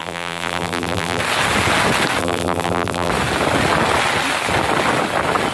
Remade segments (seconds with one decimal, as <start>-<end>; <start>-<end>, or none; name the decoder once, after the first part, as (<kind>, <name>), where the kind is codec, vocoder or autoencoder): 0.0-1.2 (vocoder, BigVGAN v2); 2.2-3.1